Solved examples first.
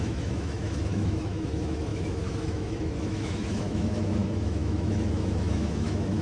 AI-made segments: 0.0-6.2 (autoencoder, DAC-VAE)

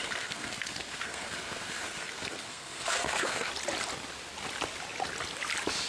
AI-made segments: 0.0-3.5 (codec, SNAC)

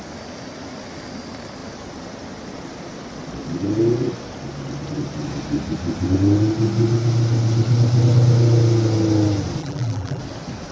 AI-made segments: 9.6-10.2 (vocoder, BigVGAN v2)

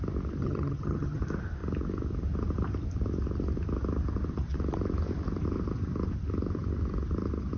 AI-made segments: 0.4-1.2 (vocoder, HiFi-GAN)

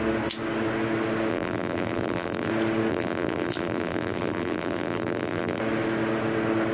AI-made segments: 1.3-2.5 (vocoder, BigVGAN v2); 2.9-5.6

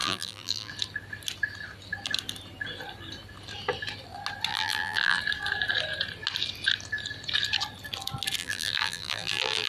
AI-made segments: 0.0-0.7 (vocoder, BigVGAN v2); 4.5-5.2; 8.4-9.7

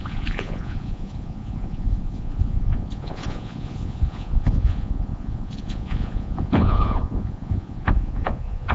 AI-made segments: 0.0-8.7 (vocoder, Vocos)

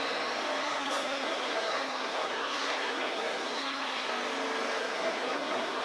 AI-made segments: 0.6-4.1 (codec, SNAC); 4.8-5.8